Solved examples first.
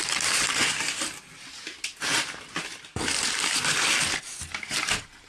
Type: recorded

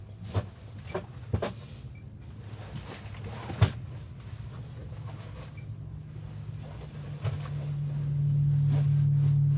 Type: recorded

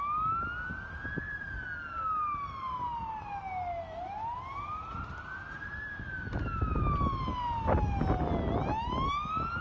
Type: recorded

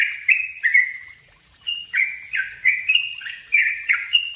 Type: remade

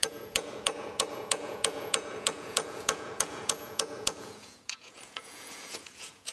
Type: remade